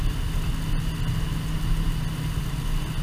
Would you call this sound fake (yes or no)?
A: no